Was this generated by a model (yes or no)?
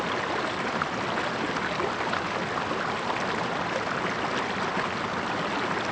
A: no